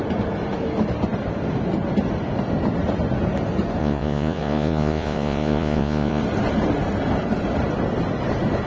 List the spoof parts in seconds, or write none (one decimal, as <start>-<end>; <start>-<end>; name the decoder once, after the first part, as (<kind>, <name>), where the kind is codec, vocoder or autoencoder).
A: 3.8-6.2 (vocoder, Vocos)